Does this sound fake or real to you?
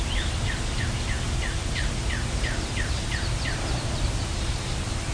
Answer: real